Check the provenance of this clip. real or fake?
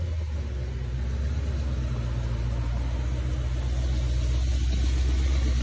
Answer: real